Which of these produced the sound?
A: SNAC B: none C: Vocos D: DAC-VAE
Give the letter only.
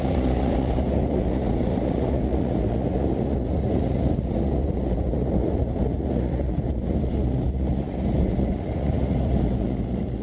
C